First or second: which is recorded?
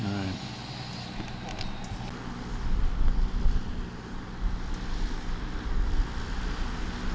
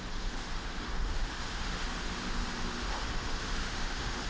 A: first